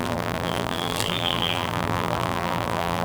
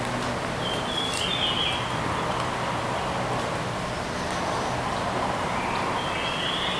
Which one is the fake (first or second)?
first